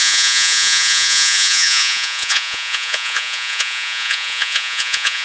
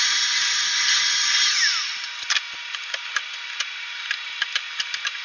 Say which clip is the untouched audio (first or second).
second